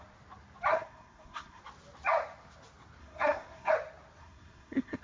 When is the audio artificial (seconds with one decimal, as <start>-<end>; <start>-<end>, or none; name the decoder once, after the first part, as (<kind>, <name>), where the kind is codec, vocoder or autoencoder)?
0.7-1.6 (codec, SNAC); 3.0-3.7; 4.2-5.0